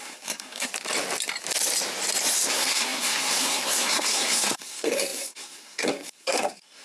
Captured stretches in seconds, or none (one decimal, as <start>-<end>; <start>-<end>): 0.7-2.5